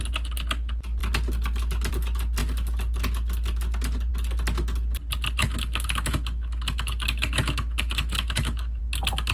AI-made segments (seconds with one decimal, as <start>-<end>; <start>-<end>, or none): 5.4-8.8